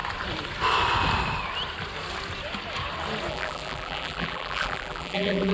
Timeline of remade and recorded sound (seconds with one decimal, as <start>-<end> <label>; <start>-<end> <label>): 0.0-3.3 recorded; 3.3-5.5 remade